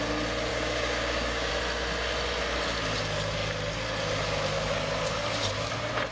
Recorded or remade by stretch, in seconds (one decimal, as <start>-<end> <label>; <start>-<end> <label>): 0.0-0.5 recorded; 0.5-1.5 remade; 1.5-6.1 recorded